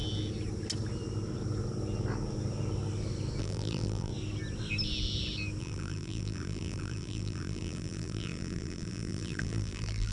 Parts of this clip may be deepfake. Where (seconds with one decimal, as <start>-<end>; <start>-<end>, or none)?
3.4-4.1; 5.6-10.1